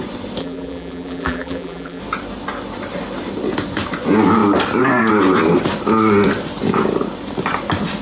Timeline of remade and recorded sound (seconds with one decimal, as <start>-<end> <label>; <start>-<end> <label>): 0.0-0.4 recorded; 0.4-2.0 remade; 2.0-8.0 recorded